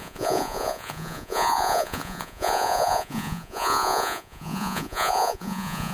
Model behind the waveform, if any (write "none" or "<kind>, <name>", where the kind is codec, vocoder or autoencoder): vocoder, Vocos